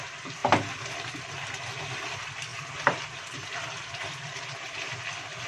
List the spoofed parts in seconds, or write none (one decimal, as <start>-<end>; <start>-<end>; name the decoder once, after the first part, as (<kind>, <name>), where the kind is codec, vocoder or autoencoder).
none